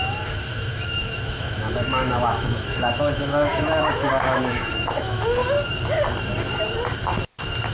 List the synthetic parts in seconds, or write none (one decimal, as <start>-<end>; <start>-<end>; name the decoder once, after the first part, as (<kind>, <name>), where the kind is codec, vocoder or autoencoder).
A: 0.0-5.4 (autoencoder, DAC-VAE)